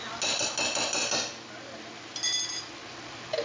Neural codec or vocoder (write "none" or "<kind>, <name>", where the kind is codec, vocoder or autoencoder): none